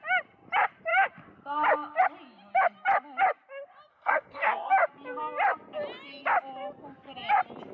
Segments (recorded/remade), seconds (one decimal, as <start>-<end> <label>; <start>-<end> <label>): 0.0-3.9 recorded; 3.9-4.7 remade; 4.7-7.7 recorded